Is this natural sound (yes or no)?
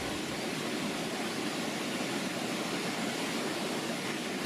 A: yes